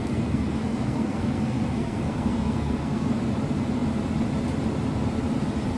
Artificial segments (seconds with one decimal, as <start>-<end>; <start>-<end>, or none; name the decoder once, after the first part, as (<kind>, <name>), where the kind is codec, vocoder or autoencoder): 0.0-3.2 (codec, SNAC)